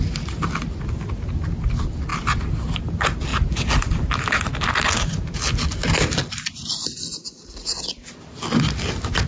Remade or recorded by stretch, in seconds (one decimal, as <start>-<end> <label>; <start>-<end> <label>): 0.0-9.3 recorded